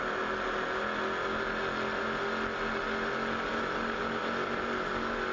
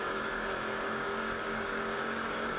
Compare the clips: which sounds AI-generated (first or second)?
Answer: second